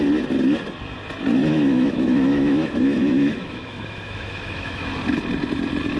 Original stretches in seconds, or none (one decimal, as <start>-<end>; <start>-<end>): 0.0-1.4; 5.0-6.0